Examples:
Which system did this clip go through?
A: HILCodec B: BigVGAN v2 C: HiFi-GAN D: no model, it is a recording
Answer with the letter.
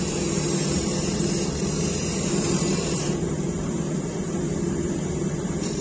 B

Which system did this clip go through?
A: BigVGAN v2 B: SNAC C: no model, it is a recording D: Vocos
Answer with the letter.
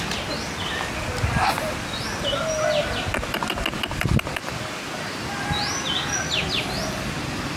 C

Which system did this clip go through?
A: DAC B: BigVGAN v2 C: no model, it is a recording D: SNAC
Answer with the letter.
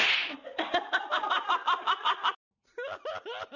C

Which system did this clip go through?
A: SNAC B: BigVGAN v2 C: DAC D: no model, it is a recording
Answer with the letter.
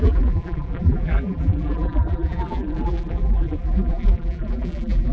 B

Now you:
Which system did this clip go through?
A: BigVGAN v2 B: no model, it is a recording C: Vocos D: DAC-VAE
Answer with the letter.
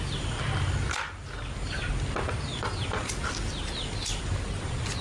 B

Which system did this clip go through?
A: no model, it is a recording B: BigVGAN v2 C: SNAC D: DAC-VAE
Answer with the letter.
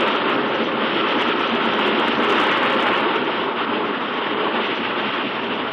B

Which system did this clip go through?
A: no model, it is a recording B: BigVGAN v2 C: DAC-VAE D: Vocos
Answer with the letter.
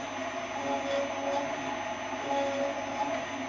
A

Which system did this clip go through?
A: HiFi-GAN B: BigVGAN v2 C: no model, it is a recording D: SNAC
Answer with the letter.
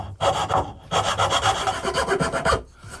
C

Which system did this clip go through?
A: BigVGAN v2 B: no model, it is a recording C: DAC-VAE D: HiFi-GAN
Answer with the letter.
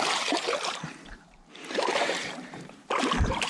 A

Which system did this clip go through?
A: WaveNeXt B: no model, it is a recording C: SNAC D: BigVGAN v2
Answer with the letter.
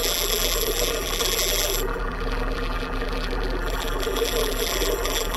D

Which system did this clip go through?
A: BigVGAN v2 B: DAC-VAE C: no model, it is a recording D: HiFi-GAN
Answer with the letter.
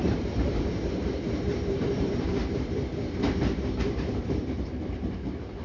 A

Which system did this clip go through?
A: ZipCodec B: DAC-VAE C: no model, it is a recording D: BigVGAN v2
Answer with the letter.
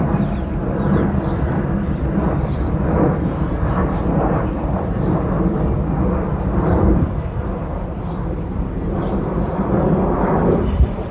D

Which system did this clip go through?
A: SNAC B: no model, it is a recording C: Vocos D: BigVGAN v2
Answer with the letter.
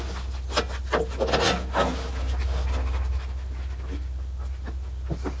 B